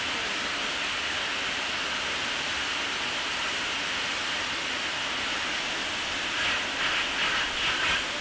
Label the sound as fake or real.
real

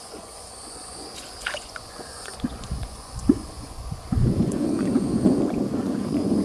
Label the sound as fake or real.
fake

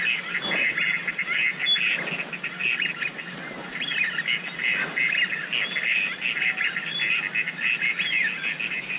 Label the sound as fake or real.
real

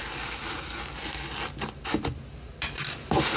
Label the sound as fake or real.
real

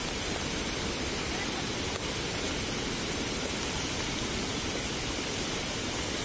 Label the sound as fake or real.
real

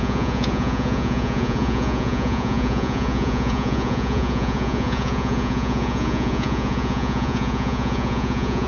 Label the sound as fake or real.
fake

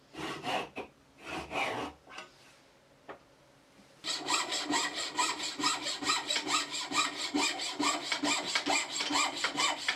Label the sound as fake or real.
real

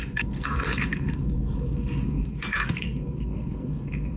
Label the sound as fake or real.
fake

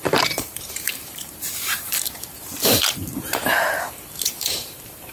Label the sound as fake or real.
fake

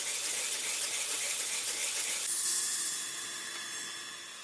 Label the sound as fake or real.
real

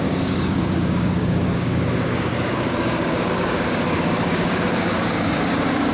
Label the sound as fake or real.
fake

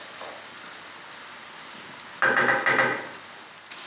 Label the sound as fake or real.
real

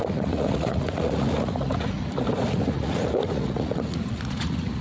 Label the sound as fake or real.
fake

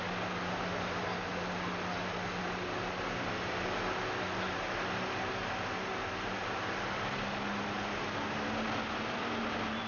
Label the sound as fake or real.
real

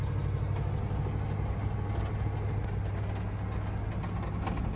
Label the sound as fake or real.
real